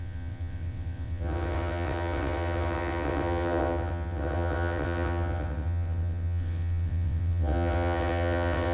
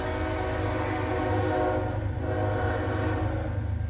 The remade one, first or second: first